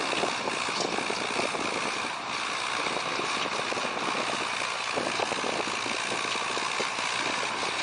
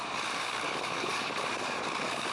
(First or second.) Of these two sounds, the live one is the first